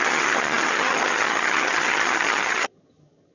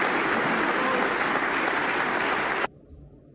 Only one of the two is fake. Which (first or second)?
first